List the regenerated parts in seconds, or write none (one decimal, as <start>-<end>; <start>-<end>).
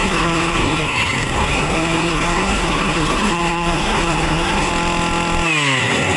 0.0-4.7; 5.8-6.2